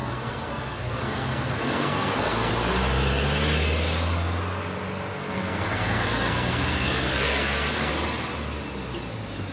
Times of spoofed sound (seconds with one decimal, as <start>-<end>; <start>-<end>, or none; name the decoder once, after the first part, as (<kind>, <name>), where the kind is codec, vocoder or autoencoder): 0.0-2.5 (codec, SNAC); 5.1-7.9